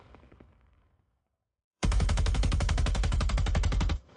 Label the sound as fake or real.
fake